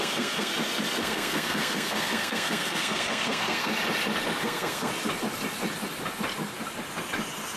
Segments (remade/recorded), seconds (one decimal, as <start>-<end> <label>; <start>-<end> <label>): 0.0-0.5 remade; 0.5-1.0 recorded; 1.0-3.7 remade; 3.7-4.4 recorded; 4.4-4.9 remade; 4.9-7.6 recorded